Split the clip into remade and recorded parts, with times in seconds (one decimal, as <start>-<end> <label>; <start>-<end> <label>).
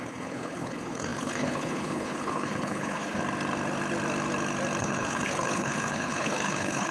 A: 0.0-3.2 remade; 3.2-4.8 recorded; 4.8-6.9 remade